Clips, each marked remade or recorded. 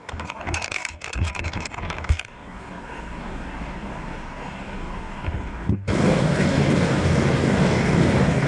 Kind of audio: remade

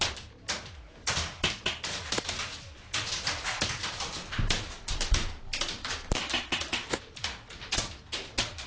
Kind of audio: recorded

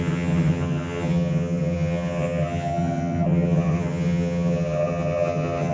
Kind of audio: remade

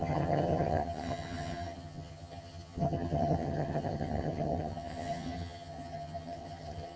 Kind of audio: remade